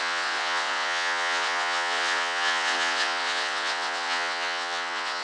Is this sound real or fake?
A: fake